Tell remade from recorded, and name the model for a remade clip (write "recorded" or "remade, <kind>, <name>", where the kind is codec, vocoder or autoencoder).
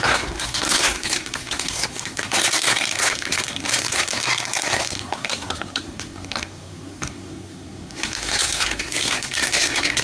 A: remade, codec, SNAC